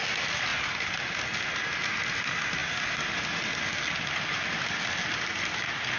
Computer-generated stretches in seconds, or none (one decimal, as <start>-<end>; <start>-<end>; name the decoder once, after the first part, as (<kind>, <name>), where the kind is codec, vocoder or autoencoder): none